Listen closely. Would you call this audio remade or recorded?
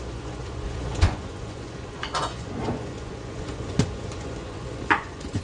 remade